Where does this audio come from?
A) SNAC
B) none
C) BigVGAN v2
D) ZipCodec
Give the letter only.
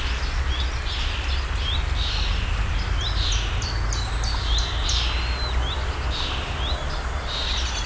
B